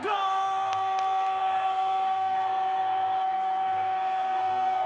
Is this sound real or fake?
fake